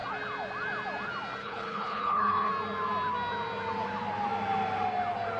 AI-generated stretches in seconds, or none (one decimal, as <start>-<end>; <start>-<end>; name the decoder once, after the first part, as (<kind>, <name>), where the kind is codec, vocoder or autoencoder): 1.4-2.5 (codec, HILCodec)